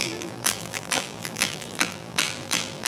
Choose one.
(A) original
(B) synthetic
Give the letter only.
B